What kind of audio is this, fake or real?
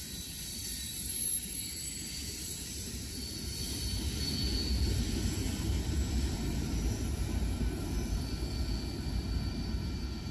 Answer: fake